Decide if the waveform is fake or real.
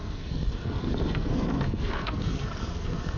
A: fake